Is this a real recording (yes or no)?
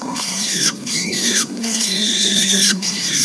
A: no